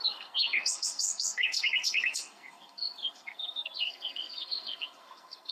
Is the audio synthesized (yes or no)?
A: yes